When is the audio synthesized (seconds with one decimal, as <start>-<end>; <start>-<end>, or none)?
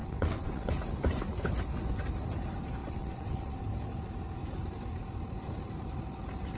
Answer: 0.0-0.7; 2.8-3.6